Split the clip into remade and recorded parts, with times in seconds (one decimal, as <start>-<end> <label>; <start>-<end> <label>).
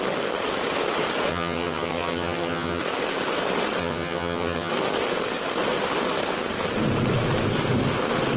0.0-1.3 recorded; 1.3-2.8 remade; 2.8-3.8 recorded; 3.8-4.7 remade; 4.7-8.4 recorded